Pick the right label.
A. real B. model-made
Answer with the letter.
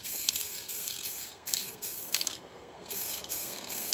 B